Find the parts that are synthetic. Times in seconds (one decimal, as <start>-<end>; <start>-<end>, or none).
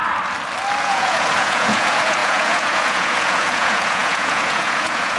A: 0.8-5.2